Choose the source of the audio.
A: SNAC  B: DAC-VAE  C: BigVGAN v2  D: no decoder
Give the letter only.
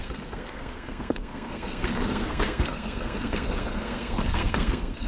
A